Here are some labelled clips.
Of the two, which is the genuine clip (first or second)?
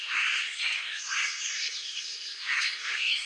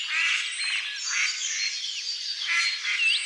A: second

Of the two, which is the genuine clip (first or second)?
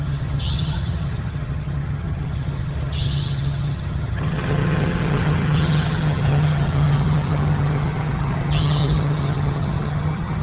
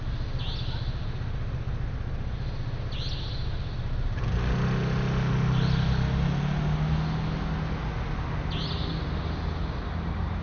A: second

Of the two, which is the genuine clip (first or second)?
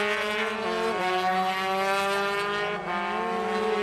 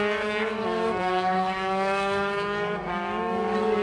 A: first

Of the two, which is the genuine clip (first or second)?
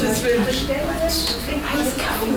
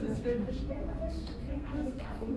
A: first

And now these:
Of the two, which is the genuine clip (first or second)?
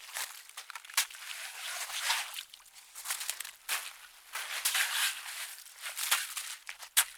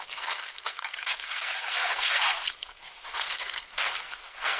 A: first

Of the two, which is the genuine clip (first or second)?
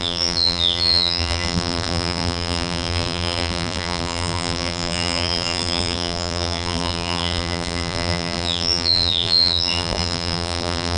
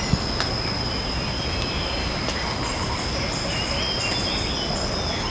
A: second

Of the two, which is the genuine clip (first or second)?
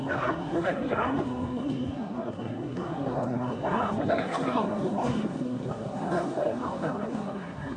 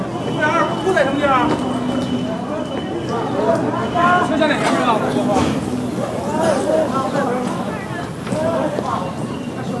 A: second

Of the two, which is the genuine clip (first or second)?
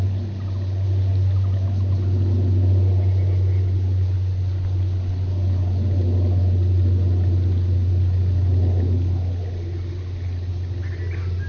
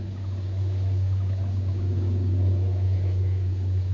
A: first